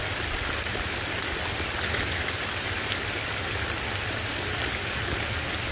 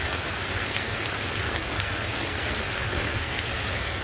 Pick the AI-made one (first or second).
second